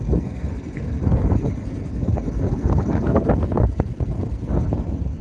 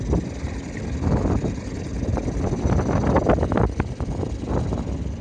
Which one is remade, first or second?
first